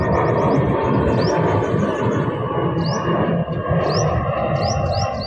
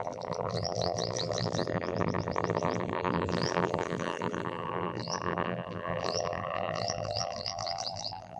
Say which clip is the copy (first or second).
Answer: second